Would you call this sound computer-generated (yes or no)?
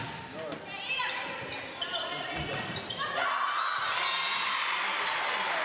no